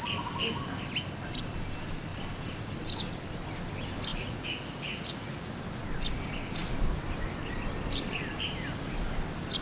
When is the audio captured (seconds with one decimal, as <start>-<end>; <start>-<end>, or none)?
0.0-4.1; 5.5-9.6

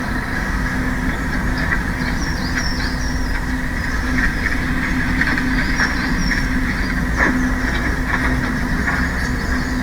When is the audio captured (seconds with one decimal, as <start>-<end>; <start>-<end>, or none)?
0.0-6.2; 7.0-9.8

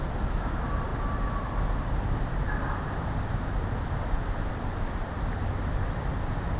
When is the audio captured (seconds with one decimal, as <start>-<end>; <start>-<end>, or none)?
0.0-6.6

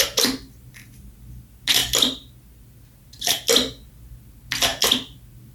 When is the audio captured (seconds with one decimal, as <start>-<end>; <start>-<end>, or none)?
0.0-5.5

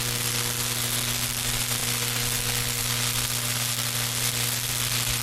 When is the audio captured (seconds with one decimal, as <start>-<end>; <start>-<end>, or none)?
0.0-5.2